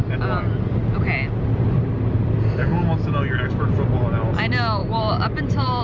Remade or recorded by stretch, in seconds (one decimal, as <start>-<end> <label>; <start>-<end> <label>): 0.0-4.8 recorded; 4.8-5.8 remade